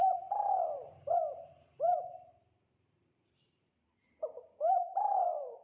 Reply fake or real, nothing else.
fake